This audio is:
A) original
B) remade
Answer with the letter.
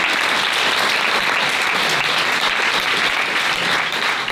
A